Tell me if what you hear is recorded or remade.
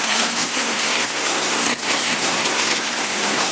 remade